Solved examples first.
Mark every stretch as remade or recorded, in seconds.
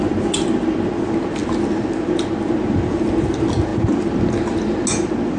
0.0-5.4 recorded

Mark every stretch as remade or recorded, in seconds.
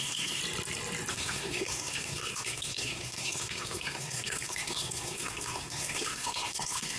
0.0-0.4 remade; 0.4-1.1 recorded; 1.1-7.0 remade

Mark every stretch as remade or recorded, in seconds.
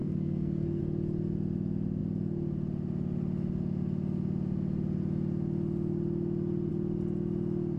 0.0-0.8 remade; 0.8-7.8 recorded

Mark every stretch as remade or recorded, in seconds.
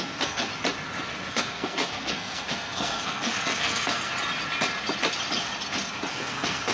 0.0-0.5 remade; 0.5-1.3 recorded; 1.3-4.1 remade; 4.1-6.1 recorded; 6.1-6.7 remade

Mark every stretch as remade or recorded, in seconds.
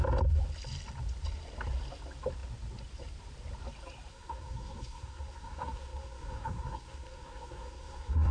0.0-4.1 recorded; 4.1-8.3 remade